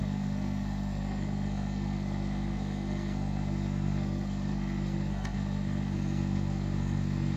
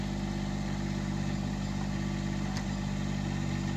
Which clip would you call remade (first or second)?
first